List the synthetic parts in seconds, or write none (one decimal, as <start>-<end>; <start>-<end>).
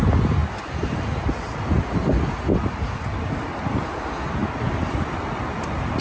none